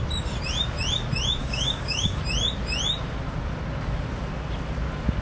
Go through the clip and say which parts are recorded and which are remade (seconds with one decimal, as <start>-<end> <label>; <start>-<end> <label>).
0.0-1.4 recorded; 1.4-2.2 remade; 2.2-5.2 recorded